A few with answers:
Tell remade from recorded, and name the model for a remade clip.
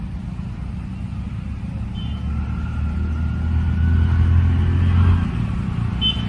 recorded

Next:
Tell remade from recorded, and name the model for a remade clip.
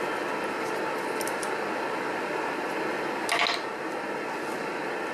recorded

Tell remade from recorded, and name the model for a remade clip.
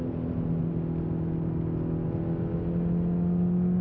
recorded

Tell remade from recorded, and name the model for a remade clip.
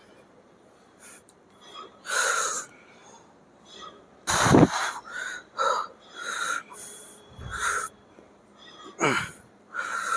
remade, vocoder, BigVGAN v2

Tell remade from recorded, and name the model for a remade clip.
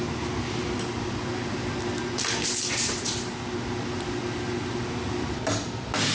recorded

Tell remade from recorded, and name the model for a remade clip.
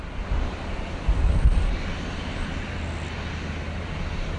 recorded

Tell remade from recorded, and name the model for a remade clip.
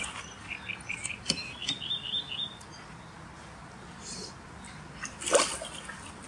recorded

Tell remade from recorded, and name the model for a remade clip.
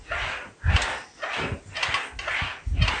recorded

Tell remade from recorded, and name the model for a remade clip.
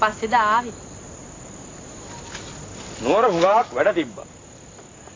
recorded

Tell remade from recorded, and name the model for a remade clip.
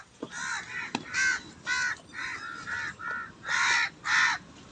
recorded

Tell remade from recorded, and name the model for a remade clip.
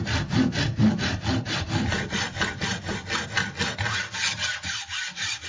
recorded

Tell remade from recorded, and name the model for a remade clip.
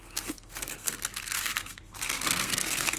remade, codec, SNAC